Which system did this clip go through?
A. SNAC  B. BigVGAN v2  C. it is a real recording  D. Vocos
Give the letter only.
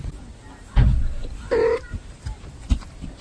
C